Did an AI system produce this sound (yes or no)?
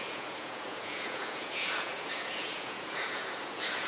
yes